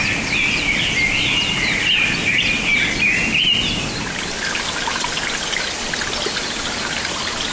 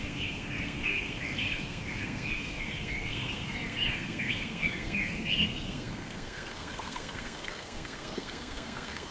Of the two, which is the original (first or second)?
first